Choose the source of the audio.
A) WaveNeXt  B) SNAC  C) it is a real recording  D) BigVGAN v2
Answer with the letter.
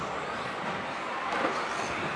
C